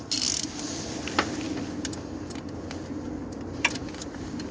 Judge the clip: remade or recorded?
recorded